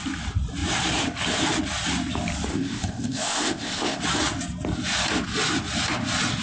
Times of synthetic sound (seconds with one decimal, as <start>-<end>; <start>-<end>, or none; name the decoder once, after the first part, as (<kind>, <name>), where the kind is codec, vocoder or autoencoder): 2.5-4.0 (codec, ZipCodec)